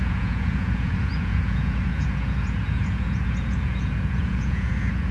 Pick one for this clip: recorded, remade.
remade